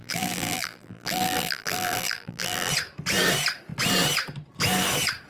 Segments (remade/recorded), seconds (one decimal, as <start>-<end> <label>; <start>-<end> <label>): 0.0-2.7 remade; 2.7-5.3 recorded

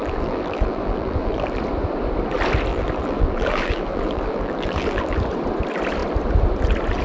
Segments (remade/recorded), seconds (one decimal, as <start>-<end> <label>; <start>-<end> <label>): 0.0-1.6 remade; 1.6-2.7 recorded; 2.7-5.2 remade; 5.2-7.0 recorded